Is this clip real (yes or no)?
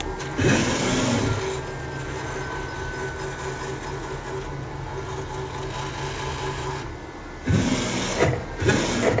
yes